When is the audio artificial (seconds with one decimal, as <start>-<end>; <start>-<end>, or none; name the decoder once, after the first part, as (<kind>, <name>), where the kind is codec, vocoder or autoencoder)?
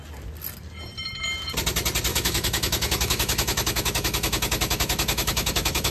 2.1-5.9 (autoencoder, DAC-VAE)